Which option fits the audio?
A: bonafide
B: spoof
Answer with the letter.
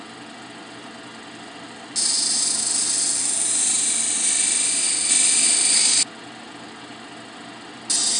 A